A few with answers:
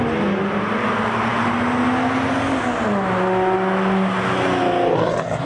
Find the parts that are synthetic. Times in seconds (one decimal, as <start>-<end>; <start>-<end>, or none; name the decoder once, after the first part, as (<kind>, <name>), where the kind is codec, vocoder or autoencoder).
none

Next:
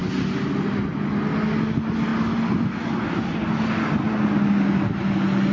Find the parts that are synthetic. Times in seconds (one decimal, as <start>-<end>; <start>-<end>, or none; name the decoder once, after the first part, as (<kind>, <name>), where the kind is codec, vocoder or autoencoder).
none

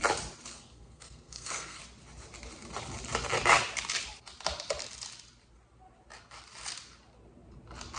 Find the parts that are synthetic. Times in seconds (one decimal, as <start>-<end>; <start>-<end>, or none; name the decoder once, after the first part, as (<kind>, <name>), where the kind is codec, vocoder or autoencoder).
0.5-1.8 (codec, SNAC)

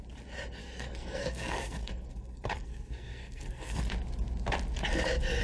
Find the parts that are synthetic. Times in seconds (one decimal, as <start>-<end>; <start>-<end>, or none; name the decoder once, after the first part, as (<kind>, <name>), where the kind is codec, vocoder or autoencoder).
0.6-3.8 (codec, SNAC)